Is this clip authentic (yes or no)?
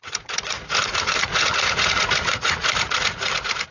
no